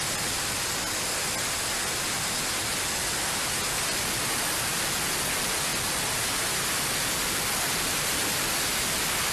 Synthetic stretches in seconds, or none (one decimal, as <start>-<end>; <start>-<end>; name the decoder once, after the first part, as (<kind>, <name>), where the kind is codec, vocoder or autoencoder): none